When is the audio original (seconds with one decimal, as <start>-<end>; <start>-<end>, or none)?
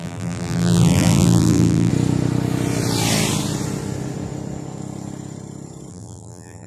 1.9-5.9